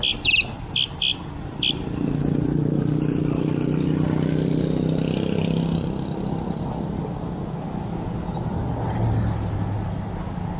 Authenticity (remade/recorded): recorded